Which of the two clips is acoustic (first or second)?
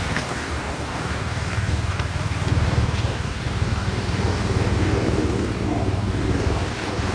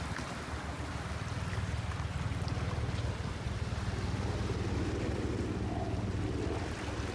second